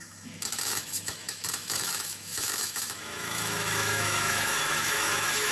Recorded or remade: remade